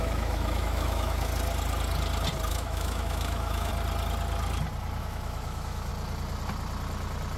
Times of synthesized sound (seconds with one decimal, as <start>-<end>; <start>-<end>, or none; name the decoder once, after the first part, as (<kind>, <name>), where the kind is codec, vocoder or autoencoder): 0.0-1.3 (autoencoder, DAC-VAE); 2.5-3.7; 5.0-5.9